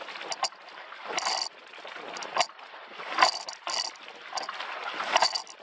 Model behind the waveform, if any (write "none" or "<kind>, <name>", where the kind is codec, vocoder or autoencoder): none